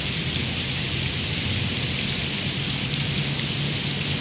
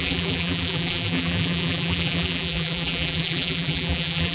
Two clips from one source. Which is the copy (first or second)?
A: second